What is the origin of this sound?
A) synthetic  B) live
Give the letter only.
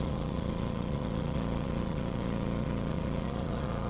A